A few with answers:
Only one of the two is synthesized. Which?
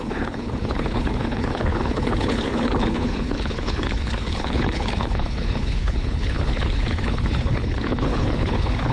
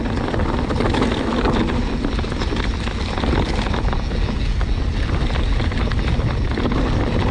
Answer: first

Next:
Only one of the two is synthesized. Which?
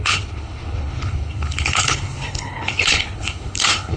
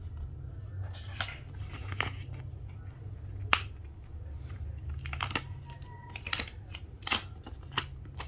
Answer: first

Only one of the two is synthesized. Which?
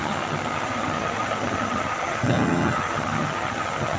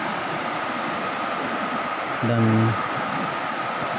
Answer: first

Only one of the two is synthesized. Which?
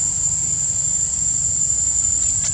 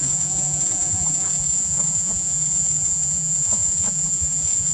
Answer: second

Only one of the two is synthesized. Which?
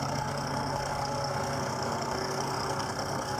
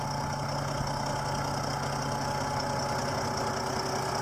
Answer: first